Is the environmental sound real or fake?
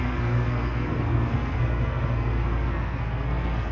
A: fake